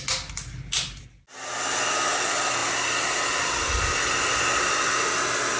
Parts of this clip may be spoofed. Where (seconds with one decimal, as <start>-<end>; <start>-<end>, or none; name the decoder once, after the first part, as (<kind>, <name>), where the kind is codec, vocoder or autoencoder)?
none